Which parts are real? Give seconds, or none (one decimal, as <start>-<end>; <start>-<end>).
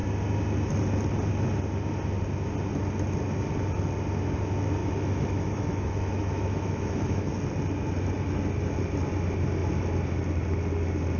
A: 0.0-4.8; 7.3-11.2